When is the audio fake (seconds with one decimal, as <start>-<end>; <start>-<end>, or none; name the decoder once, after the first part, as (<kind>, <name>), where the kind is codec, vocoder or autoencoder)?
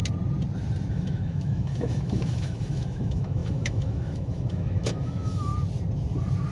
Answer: 0.9-5.5 (autoencoder, DAC-VAE)